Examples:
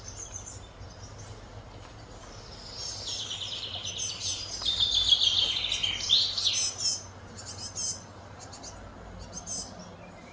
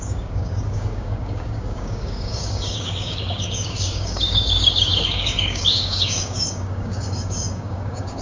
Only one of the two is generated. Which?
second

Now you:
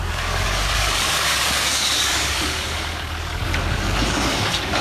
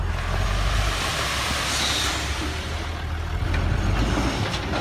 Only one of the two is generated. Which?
first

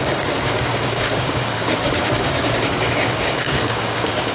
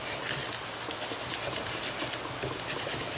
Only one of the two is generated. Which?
first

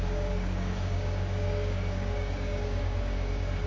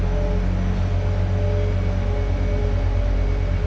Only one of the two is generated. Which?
first